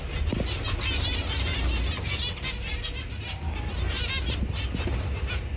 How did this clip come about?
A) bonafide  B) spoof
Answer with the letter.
A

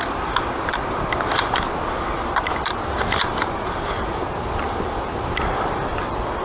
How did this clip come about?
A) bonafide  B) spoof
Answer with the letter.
A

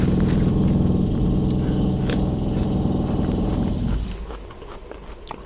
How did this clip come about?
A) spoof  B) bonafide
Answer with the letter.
B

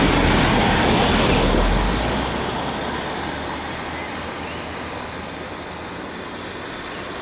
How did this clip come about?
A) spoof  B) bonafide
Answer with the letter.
B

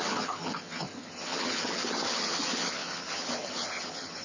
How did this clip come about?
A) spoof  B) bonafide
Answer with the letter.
A